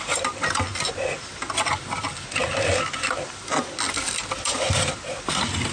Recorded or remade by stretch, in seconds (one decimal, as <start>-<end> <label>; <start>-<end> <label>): 0.0-5.7 recorded